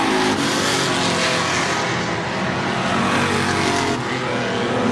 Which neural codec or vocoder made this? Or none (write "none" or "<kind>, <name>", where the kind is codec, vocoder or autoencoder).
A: none